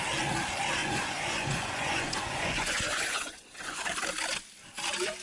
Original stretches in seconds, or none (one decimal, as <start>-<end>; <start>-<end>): 0.0-0.8; 3.9-5.2